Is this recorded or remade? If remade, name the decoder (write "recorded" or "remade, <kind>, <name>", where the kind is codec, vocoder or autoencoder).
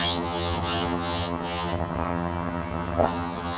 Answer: remade, vocoder, HiFi-GAN